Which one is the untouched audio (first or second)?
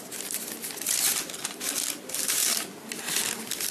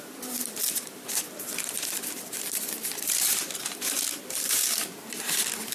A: first